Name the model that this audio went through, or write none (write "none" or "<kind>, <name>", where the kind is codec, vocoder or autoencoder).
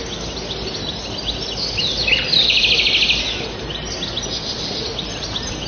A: none